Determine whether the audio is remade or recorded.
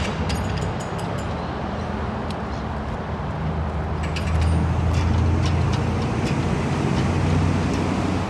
recorded